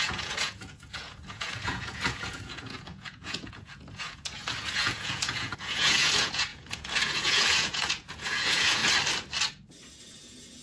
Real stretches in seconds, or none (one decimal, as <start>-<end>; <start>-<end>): 8.8-10.0